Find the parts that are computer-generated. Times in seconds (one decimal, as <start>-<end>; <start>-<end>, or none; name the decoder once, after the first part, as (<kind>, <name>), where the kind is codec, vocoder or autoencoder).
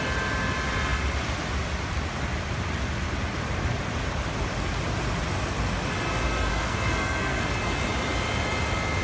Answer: 6.5-7.4 (codec, SNAC)